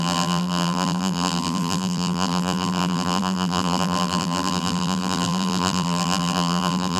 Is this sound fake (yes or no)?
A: yes